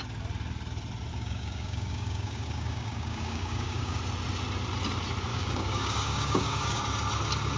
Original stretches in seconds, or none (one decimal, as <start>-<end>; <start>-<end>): 0.0-1.1; 4.0-5.3; 6.8-7.6